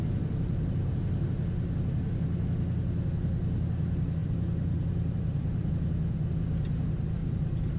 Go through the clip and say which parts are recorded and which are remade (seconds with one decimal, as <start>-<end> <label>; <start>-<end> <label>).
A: 0.0-4.2 recorded; 4.2-5.7 remade; 5.7-7.2 recorded; 7.2-7.8 remade